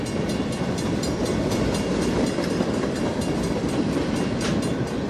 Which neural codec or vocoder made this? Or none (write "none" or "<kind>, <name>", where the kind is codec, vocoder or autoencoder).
none